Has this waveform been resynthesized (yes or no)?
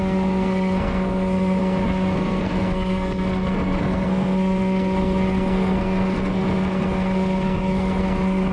yes